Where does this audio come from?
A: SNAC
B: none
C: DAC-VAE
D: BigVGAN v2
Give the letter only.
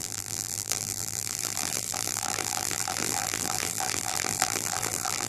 D